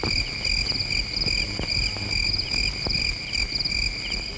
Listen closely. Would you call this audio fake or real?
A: real